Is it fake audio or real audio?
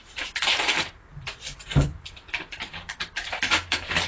fake